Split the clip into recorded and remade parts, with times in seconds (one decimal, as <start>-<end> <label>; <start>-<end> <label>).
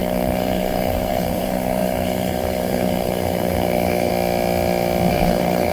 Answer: 0.0-4.1 remade; 4.1-5.1 recorded; 5.1-5.7 remade